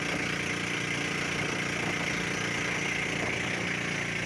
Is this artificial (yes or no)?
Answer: no